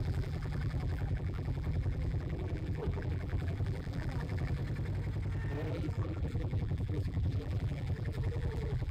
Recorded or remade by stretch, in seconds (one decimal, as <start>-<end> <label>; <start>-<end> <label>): 0.0-4.6 remade; 4.6-5.7 recorded; 5.7-8.9 remade